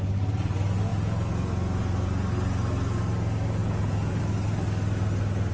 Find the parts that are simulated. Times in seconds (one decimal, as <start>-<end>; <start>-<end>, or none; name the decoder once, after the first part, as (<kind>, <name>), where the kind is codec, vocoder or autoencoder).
0.9-1.8 (vocoder, Vocos); 3.6-4.2